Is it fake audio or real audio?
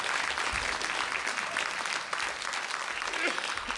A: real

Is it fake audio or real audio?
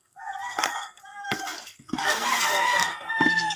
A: fake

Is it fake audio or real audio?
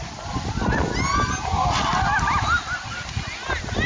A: real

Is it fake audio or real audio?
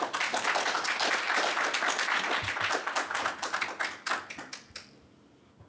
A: real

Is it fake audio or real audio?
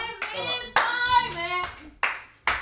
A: real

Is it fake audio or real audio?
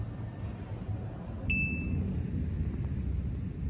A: real